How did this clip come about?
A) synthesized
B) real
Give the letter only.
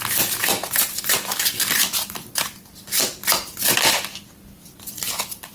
B